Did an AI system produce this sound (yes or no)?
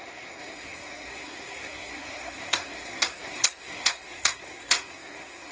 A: yes